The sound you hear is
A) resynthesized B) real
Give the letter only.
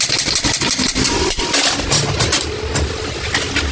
B